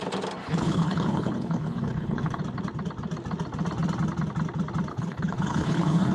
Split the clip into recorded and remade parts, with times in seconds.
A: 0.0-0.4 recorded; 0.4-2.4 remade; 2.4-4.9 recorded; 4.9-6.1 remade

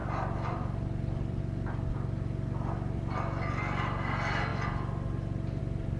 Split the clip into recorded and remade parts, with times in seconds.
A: 0.0-6.0 recorded